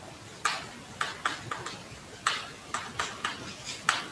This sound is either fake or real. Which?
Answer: real